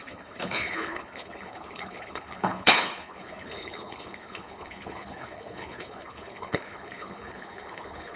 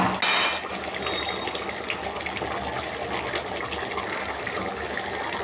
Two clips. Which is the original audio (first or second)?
second